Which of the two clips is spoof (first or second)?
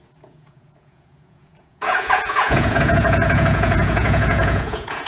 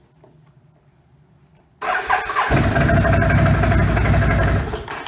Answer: first